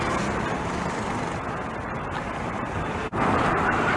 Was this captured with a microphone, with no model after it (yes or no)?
yes